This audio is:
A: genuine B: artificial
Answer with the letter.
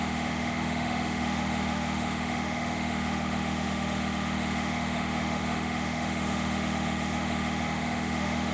B